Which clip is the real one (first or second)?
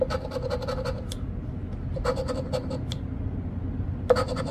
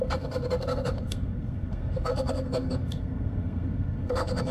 first